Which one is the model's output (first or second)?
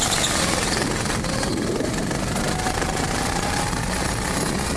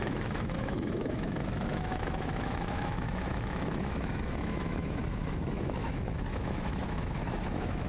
second